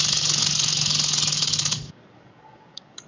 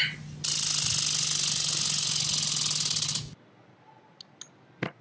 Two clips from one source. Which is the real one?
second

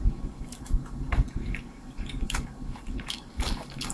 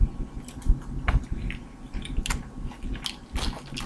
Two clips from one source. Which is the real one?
second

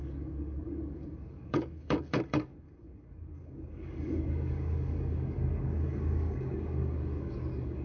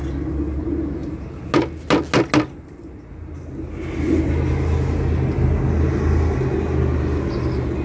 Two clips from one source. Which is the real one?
second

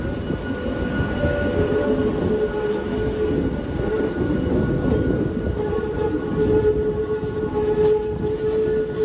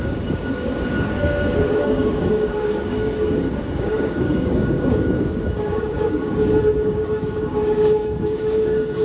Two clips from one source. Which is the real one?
first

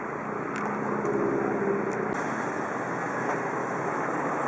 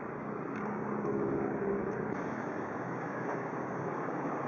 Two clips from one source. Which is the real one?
first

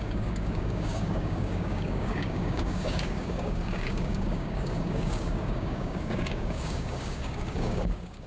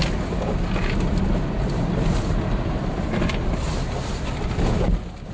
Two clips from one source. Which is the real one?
second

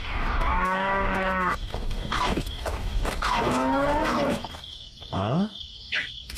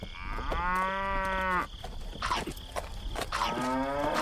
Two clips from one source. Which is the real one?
second